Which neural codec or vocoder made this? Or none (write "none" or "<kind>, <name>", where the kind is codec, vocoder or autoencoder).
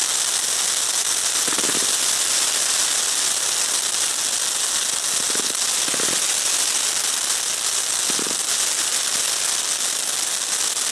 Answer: none